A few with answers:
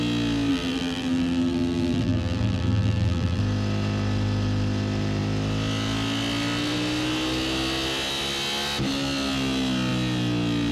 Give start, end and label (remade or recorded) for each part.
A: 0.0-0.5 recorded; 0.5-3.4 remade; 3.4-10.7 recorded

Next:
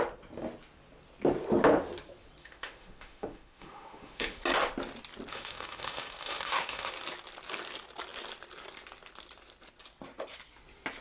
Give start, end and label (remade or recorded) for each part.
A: 0.0-2.4 recorded; 2.4-4.4 remade; 4.4-5.3 recorded; 5.3-6.9 remade; 6.9-11.0 recorded

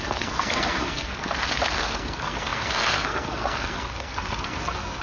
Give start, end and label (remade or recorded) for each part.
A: 0.0-5.0 remade

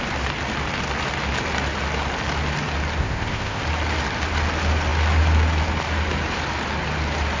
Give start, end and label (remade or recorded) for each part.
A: 0.0-3.0 recorded; 3.0-3.6 remade; 3.6-7.4 recorded

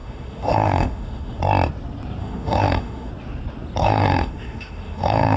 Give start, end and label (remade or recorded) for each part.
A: 0.0-1.4 remade; 1.4-2.2 recorded; 2.2-3.1 remade; 3.1-3.8 recorded; 3.8-5.4 remade

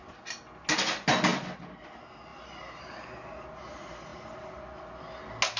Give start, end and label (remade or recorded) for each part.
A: 0.0-5.6 recorded

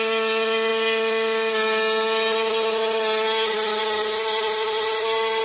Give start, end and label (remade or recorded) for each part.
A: 0.0-5.4 recorded